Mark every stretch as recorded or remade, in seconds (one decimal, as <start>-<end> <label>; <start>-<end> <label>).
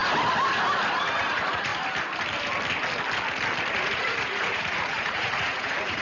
0.0-1.2 recorded; 1.2-1.7 remade; 1.7-3.7 recorded; 3.7-6.0 remade